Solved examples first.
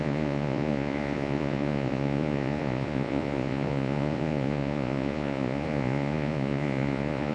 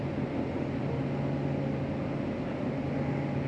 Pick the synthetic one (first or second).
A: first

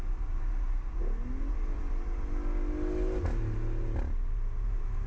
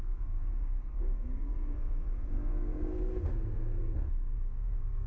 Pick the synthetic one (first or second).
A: second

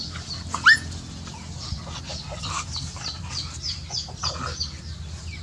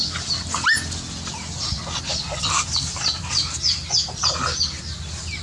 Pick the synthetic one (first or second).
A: first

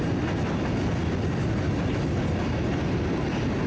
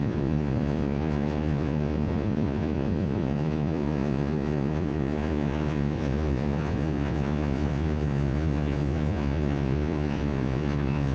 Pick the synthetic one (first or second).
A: second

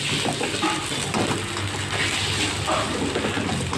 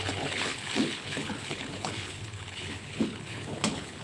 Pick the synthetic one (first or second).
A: second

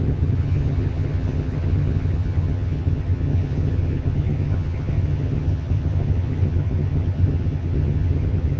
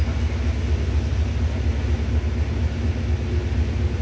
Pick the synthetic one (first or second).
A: first